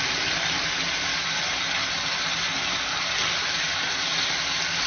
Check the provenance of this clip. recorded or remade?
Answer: recorded